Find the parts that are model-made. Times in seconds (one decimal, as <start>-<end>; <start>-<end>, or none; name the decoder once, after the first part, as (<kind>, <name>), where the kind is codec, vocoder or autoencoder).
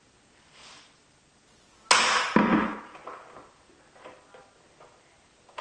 none